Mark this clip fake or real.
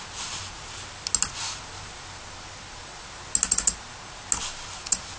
real